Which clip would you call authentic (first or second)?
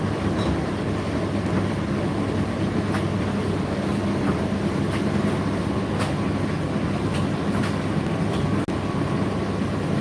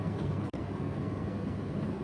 first